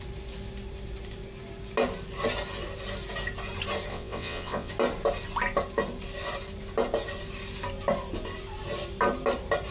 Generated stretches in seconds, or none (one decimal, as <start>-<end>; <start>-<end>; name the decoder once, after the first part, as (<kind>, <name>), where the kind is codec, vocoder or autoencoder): 3.9-4.7 (vocoder, WaveNeXt)